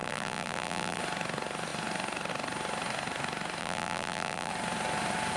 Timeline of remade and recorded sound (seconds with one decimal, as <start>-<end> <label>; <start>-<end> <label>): 0.0-1.0 remade; 1.0-3.6 recorded; 3.6-4.5 remade; 4.5-5.4 recorded